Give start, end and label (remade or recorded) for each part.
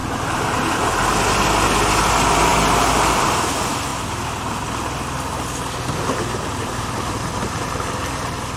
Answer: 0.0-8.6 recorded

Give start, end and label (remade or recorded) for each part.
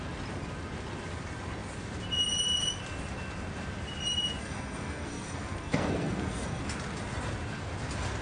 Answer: 0.0-4.4 recorded; 4.4-6.6 remade; 6.6-8.2 recorded